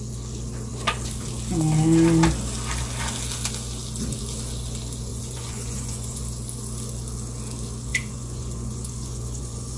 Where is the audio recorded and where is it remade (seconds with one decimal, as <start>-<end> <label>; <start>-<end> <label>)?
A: 0.0-5.1 recorded; 5.1-6.2 remade; 6.2-7.9 recorded; 7.9-9.8 remade